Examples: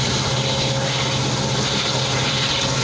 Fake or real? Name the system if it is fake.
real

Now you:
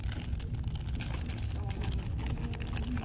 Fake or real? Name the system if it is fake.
real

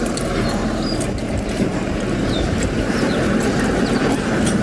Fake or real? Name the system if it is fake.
fake, vocoder, BigVGAN v2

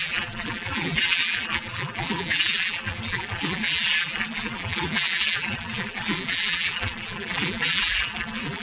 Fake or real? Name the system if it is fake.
fake, vocoder, BigVGAN v2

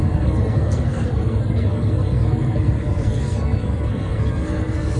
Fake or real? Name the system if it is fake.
fake, codec, SNAC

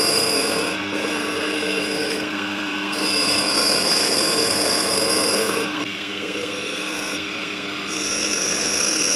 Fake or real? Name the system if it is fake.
fake, codec, SNAC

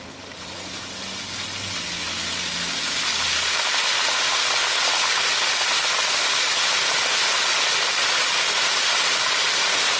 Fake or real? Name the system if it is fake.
real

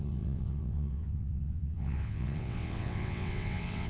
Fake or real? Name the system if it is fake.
fake, vocoder, WaveNeXt